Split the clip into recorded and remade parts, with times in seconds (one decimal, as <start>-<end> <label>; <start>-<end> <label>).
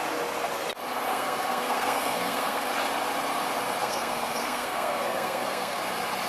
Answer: 0.0-1.1 recorded; 1.1-2.7 remade; 2.7-3.8 recorded; 3.8-5.8 remade; 5.8-6.3 recorded